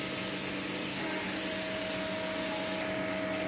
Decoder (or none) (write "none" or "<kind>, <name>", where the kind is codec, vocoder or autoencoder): none